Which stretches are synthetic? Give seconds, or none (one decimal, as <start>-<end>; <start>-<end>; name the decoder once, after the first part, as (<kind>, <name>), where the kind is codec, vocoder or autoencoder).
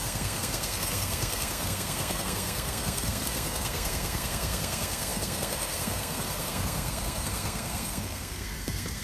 0.0-9.0 (codec, SNAC)